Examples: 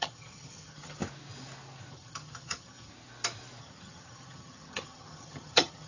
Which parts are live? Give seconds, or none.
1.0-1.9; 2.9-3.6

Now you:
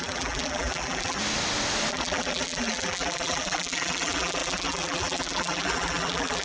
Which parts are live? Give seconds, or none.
1.2-1.9

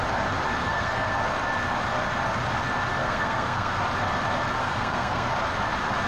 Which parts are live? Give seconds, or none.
0.0-0.6; 1.1-3.0; 3.8-4.6; 5.3-6.1